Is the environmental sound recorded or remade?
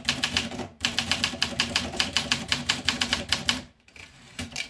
remade